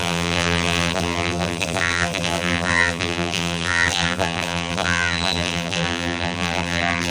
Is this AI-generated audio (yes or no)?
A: yes